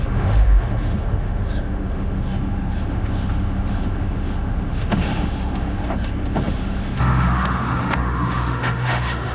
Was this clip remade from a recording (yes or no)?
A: yes